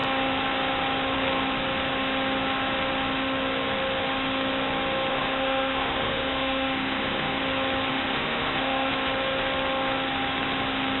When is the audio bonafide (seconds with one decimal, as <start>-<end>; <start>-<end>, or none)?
0.0-5.1; 7.4-7.9; 8.9-11.0